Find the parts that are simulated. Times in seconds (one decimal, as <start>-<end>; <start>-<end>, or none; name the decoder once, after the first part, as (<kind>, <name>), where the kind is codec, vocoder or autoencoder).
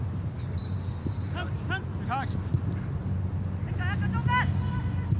none